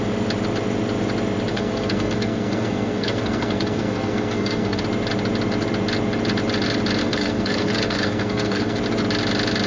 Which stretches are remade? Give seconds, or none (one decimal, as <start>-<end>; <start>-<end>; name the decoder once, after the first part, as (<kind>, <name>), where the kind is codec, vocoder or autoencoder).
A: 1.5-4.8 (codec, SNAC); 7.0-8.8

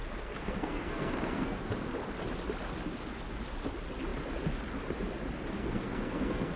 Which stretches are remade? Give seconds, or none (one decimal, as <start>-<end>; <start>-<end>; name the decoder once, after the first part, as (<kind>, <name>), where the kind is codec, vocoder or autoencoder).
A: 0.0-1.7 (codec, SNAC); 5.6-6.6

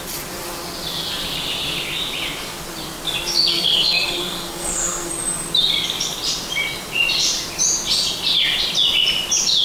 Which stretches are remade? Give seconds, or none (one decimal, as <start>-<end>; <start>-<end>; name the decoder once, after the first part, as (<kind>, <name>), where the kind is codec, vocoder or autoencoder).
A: 3.5-5.1 (codec, SNAC)

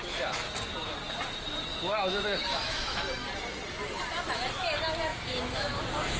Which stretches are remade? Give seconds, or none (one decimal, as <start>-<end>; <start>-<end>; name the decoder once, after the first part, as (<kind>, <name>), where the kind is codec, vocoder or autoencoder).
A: 1.7-3.0 (autoencoder, DAC-VAE); 5.1-5.7